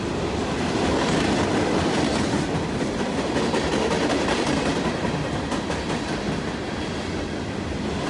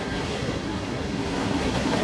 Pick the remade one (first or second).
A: second